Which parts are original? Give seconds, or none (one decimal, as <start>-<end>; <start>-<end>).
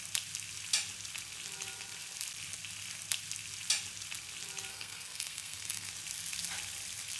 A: 0.0-4.7; 5.9-7.2